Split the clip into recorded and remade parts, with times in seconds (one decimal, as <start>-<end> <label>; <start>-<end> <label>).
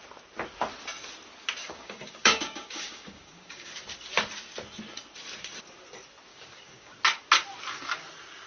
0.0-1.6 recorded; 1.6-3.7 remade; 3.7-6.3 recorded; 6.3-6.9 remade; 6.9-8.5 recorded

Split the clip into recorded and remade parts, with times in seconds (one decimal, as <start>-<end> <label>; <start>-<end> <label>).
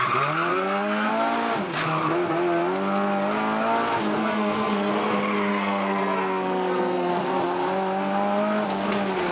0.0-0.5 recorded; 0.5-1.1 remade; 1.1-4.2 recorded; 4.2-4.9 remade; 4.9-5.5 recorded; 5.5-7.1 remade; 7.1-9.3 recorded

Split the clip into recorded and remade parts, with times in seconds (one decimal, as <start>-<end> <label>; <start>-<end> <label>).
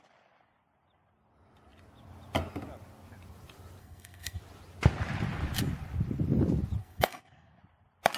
0.0-3.8 recorded; 3.8-4.4 remade; 4.4-6.8 recorded; 6.8-7.6 remade; 7.6-8.2 recorded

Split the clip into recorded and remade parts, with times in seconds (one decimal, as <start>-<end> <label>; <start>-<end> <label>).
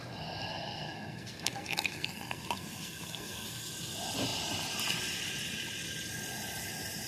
0.0-0.5 recorded; 0.5-3.7 remade; 3.7-7.1 recorded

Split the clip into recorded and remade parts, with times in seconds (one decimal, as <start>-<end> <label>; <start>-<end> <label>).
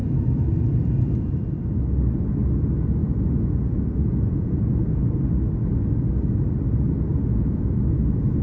0.0-3.0 recorded; 3.0-5.0 remade; 5.0-7.1 recorded; 7.1-7.7 remade; 7.7-8.4 recorded